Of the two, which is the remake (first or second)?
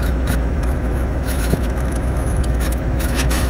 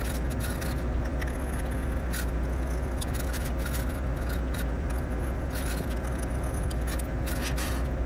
first